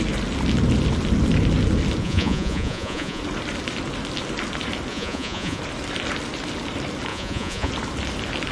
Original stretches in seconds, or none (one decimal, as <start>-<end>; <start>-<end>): 0.0-2.0; 3.2-4.9; 5.6-7.1; 7.7-8.5